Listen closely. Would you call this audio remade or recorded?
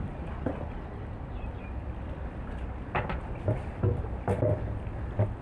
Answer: recorded